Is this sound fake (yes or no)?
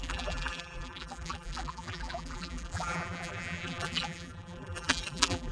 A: yes